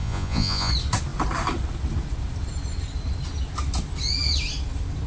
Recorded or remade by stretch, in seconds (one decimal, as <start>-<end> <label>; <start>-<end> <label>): 0.0-0.7 remade; 0.7-5.1 recorded